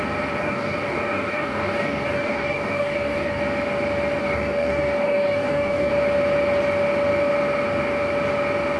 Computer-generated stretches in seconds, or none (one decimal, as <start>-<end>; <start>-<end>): 0.4-3.4; 4.2-5.9